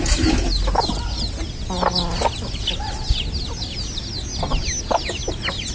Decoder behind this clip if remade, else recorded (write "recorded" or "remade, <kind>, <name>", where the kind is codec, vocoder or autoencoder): recorded